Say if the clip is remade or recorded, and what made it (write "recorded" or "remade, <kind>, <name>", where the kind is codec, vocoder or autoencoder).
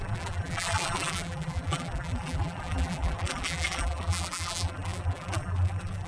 remade, vocoder, BigVGAN v2